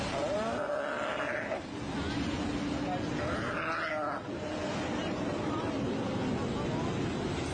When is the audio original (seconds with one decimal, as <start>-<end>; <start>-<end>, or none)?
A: 0.0-5.0; 5.6-7.5